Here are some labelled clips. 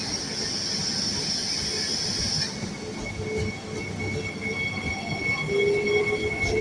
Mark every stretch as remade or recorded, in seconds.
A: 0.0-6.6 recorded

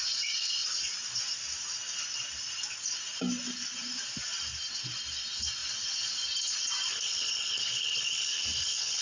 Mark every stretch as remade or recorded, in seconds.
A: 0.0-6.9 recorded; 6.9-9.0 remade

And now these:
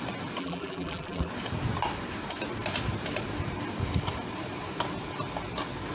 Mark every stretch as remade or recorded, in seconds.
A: 0.0-0.4 recorded; 0.4-1.3 remade; 1.3-5.9 recorded

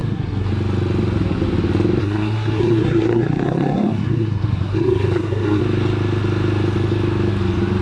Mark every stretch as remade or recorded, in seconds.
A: 0.0-0.5 remade; 0.5-2.0 recorded; 2.0-5.6 remade; 5.6-7.8 recorded